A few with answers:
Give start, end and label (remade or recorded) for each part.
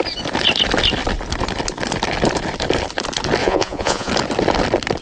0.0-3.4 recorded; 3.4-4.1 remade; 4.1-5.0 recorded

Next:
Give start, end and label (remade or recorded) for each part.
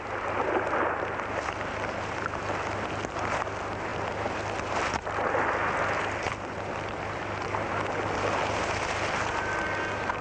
0.0-10.2 recorded